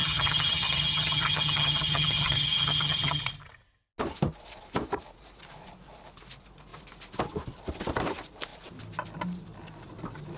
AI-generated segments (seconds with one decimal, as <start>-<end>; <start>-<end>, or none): 0.0-3.2